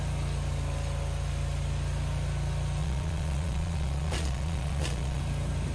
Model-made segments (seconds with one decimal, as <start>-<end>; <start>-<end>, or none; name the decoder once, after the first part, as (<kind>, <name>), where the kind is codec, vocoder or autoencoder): 2.8-5.2 (vocoder, Vocos)

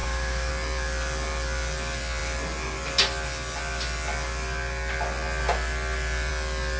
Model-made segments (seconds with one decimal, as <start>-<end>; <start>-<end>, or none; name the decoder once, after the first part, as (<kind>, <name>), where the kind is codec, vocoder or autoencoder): 0.0-0.5 (autoencoder, DAC-VAE)

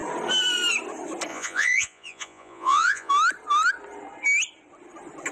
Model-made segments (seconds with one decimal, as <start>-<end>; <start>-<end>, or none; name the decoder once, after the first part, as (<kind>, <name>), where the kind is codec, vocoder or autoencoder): 1.3-3.1 (vocoder, Vocos)

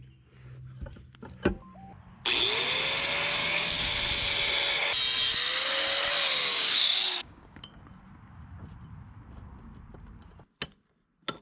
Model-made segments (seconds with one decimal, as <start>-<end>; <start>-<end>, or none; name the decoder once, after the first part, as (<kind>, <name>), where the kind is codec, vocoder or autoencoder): 3.4-3.9 (codec, DAC); 6.5-7.8